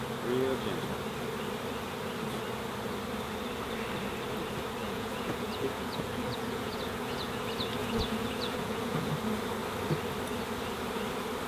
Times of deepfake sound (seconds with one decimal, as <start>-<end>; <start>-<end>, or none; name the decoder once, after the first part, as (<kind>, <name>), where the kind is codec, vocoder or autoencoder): 4.8-7.3 (vocoder, Vocos); 7.8-9.1